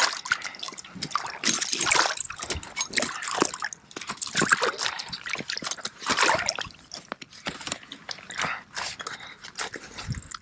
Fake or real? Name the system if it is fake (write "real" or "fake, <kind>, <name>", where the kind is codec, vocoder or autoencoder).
real